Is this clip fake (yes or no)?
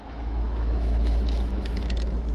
yes